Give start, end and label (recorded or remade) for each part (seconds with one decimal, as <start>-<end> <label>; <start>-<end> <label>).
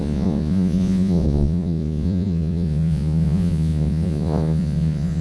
0.0-5.2 remade